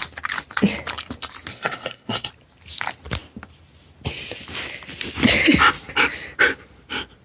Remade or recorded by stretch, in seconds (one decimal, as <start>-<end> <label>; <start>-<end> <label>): 0.0-1.5 recorded; 1.5-2.3 remade; 2.3-7.2 recorded